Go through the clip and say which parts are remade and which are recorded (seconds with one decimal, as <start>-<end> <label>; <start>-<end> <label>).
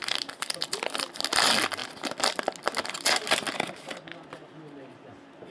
0.0-5.5 recorded